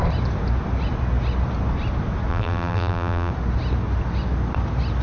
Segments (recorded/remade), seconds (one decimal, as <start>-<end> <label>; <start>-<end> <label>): 0.0-2.3 recorded; 2.3-3.3 remade; 3.3-5.0 recorded